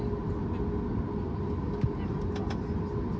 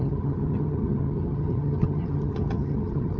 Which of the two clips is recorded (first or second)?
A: first